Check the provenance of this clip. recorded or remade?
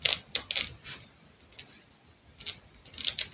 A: recorded